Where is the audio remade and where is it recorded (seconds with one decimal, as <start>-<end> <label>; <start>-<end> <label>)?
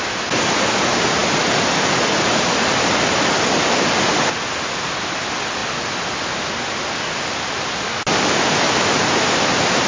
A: 0.0-9.9 recorded